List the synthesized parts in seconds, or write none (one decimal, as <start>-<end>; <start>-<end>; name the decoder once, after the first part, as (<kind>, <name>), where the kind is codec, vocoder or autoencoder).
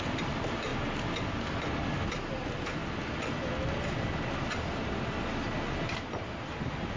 0.0-0.7 (vocoder, BigVGAN v2); 2.1-2.8; 6.6-7.0